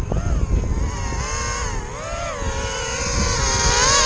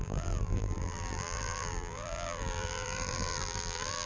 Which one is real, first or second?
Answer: first